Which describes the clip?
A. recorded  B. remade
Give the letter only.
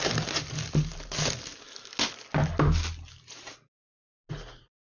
A